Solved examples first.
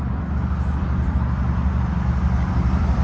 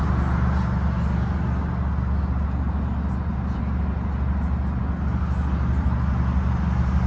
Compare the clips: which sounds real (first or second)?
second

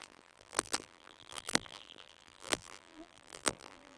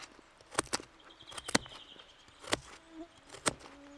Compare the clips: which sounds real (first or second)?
second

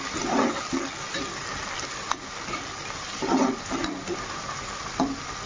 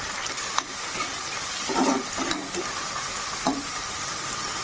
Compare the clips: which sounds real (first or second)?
first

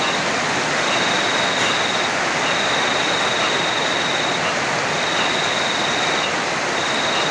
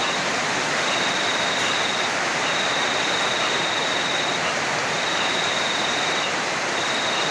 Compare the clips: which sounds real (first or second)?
first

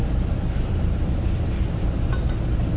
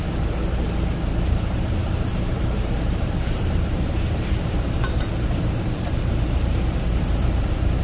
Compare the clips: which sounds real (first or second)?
first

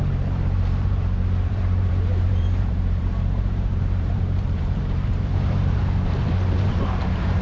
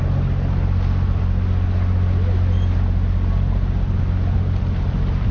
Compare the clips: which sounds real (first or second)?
second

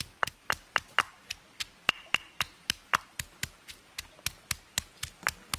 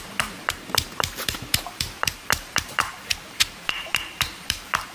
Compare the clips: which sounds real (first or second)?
first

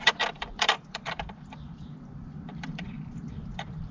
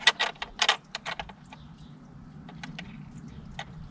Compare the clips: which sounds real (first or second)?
second